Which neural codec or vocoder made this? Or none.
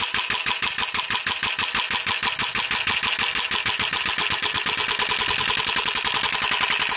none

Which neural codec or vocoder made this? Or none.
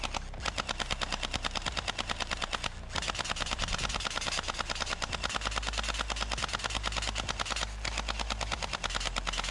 none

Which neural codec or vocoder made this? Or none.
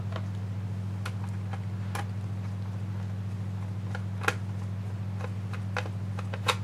none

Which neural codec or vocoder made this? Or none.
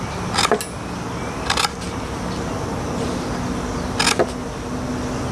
none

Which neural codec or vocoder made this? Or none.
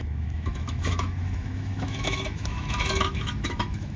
autoencoder, DAC-VAE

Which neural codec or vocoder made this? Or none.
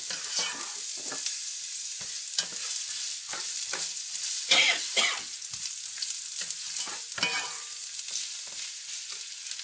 none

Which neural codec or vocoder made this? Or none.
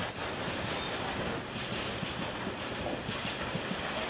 none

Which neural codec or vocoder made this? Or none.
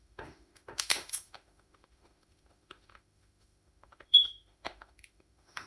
autoencoder, DAC-VAE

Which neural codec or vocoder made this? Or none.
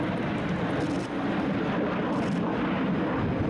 none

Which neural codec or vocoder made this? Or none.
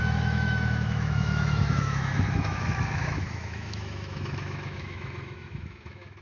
autoencoder, DAC-VAE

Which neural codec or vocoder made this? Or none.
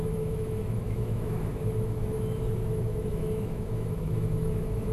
autoencoder, DAC-VAE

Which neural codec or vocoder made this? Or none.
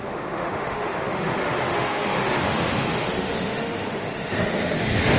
autoencoder, DAC-VAE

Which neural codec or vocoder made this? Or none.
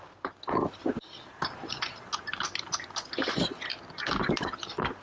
none